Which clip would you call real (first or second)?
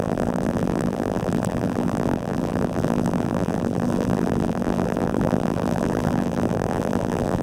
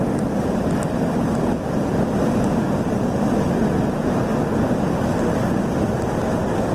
second